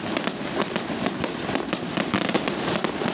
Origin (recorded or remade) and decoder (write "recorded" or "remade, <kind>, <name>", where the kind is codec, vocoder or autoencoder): recorded